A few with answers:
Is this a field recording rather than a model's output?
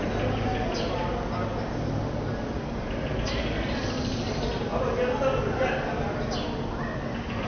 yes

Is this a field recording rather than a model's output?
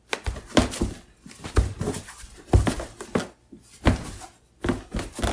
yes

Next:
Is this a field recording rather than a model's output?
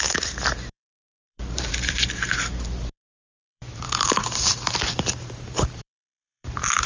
no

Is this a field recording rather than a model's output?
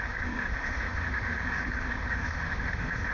no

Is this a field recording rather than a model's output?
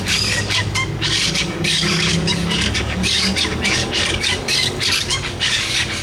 no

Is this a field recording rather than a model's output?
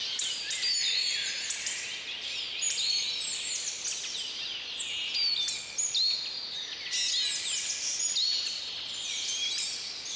yes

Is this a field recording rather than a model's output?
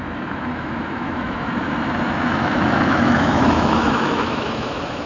no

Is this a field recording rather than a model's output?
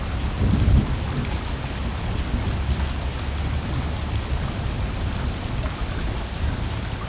yes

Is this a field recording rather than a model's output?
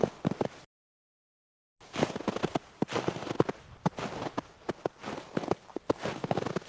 yes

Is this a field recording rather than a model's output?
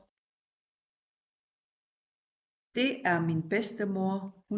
yes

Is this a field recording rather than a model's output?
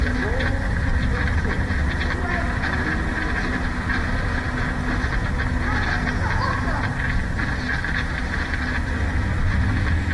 yes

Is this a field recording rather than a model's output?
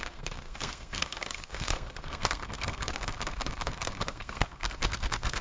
no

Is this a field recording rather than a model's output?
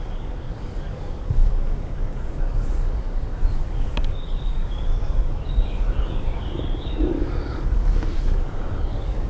no